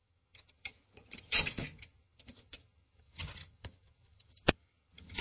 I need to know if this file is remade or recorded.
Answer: remade